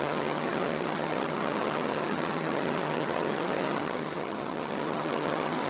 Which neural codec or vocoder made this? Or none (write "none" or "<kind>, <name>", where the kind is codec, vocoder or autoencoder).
vocoder, HiFi-GAN